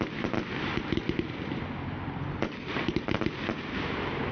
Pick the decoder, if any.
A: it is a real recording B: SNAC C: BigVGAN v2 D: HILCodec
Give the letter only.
A